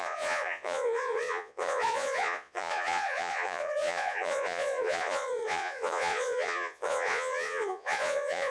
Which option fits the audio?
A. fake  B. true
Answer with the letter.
A